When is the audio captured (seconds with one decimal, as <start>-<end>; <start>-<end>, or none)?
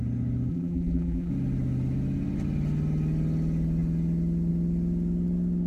0.0-0.5; 1.3-5.7